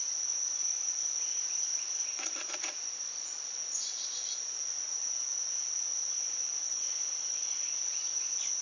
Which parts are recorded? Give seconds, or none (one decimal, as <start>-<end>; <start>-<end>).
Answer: 3.6-6.1